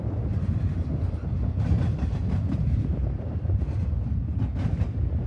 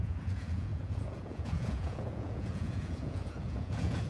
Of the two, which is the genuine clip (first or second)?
first